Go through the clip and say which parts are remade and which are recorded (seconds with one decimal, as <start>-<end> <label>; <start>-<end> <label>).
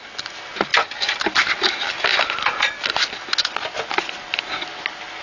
0.0-5.2 recorded